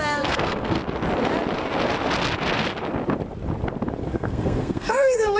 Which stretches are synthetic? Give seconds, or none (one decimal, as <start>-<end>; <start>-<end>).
0.0-0.8; 4.0-5.4